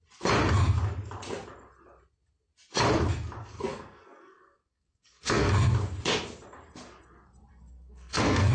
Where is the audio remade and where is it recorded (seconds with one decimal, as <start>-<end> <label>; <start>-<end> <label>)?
0.0-3.4 recorded; 3.4-5.5 remade; 5.5-7.5 recorded; 7.5-8.5 remade